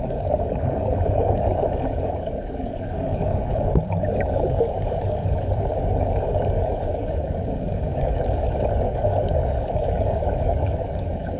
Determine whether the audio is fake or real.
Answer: fake